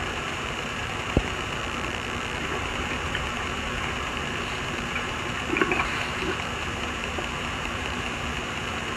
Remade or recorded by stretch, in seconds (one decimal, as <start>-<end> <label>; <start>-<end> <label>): 0.0-1.6 remade; 1.6-2.4 recorded; 2.4-9.0 remade